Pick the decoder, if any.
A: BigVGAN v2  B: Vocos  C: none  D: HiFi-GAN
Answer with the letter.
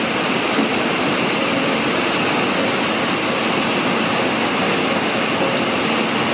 C